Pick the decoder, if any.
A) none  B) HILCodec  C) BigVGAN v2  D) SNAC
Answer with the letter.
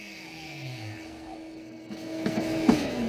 D